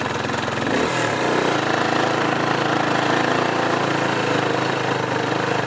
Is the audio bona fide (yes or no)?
yes